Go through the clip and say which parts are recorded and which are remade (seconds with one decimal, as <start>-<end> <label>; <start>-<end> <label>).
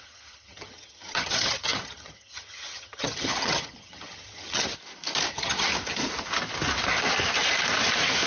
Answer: 0.0-4.7 remade; 4.7-5.3 recorded; 5.3-5.7 remade; 5.7-8.3 recorded